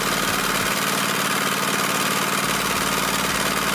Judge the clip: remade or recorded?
recorded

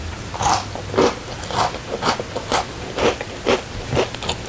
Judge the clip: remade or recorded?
recorded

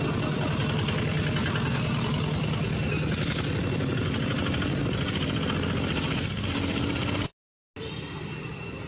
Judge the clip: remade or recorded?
recorded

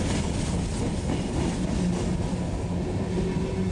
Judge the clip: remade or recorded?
recorded